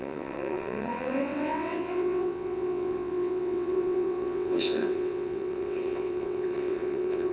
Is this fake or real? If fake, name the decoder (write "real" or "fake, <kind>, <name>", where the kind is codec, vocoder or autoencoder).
fake, vocoder, WaveNeXt